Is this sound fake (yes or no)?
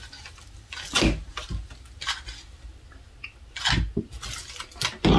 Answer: no